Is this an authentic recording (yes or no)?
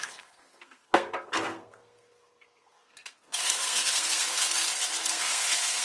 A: no